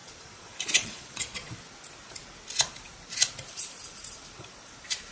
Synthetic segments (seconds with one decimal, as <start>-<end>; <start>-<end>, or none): 0.0-1.5